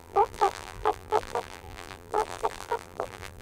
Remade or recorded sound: remade